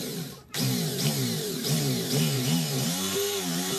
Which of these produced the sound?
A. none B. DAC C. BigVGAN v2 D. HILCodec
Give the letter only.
C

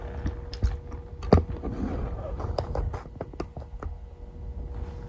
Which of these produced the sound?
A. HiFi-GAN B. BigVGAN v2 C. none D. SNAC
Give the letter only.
C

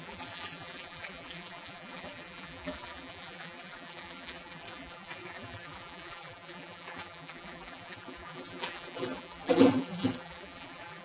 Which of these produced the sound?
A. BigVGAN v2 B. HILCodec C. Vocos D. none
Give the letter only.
A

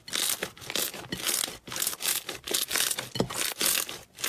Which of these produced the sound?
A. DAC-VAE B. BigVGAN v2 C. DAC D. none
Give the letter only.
D